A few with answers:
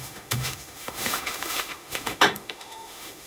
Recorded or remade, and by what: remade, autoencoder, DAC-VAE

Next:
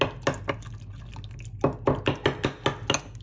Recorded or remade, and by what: recorded